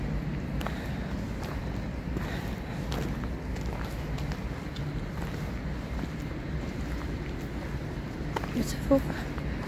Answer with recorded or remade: recorded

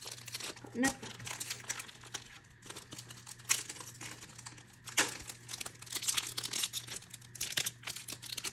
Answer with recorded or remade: recorded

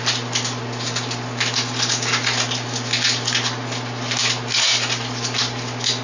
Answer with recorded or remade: recorded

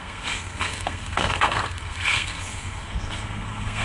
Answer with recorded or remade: remade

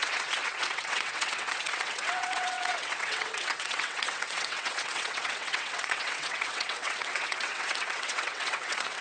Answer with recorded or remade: remade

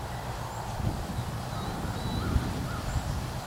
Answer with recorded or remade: remade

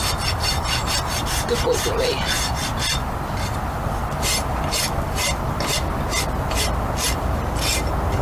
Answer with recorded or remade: recorded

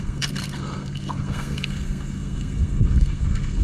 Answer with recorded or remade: remade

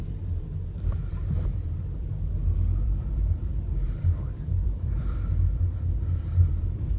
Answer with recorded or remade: remade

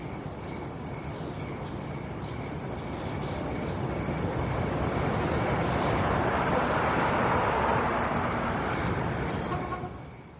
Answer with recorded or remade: recorded